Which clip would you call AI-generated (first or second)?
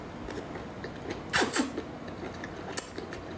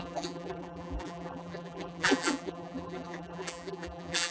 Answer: second